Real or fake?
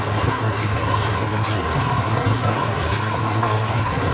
fake